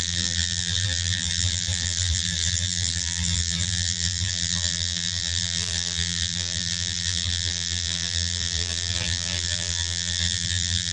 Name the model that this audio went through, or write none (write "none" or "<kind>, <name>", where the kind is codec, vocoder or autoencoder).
vocoder, BigVGAN v2